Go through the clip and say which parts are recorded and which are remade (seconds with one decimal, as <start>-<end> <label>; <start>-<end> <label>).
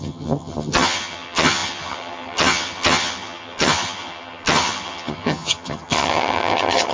0.0-6.9 remade